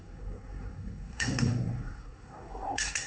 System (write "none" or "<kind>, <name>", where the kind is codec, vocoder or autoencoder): codec, SNAC